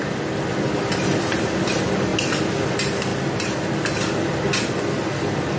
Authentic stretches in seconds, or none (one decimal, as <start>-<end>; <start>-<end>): 0.0-5.6